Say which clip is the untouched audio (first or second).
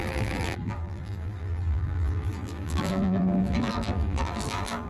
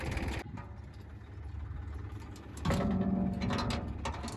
second